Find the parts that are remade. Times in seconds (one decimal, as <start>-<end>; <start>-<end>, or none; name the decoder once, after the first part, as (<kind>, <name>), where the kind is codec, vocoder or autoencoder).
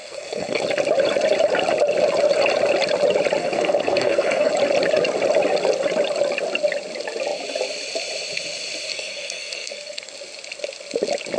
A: 0.0-0.6 (codec, SNAC); 3.4-4.5; 8.9-10.1